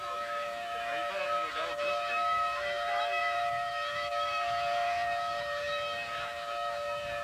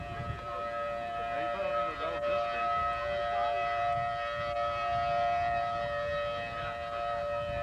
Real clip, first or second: second